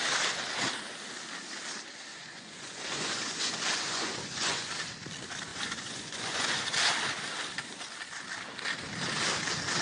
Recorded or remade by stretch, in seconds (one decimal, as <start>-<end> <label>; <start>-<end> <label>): 0.0-2.1 recorded; 2.1-4.7 remade; 4.7-5.5 recorded; 5.5-6.6 remade; 6.6-9.8 recorded